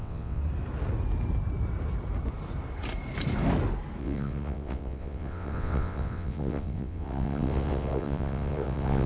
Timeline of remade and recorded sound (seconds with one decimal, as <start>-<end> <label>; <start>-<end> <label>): 0.0-0.4 remade; 0.4-4.0 recorded; 4.0-9.1 remade